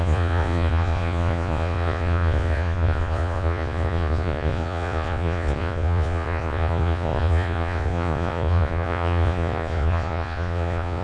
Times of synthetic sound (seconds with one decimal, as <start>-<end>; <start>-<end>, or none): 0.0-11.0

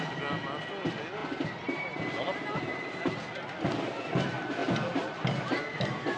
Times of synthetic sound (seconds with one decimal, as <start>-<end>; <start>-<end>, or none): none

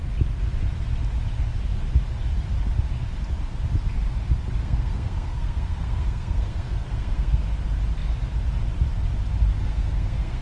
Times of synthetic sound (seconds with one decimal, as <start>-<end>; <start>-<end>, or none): 4.6-7.4; 9.6-10.4

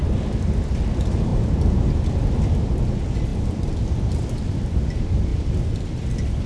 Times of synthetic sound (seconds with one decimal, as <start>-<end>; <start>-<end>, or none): none

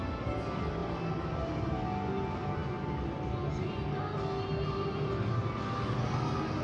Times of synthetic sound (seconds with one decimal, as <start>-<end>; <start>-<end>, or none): 0.8-1.7